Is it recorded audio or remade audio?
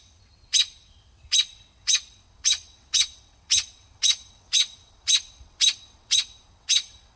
remade